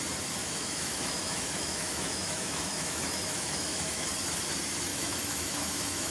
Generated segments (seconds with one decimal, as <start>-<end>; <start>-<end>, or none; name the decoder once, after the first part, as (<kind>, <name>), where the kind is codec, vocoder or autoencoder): 0.4-4.1 (autoencoder, DAC-VAE); 4.9-6.1